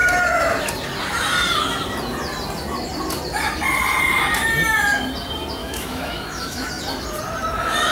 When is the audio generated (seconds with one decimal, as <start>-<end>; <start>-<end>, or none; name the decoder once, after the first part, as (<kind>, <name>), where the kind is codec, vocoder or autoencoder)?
5.6-6.7 (autoencoder, DAC-VAE)